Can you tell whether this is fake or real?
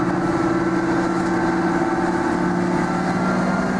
real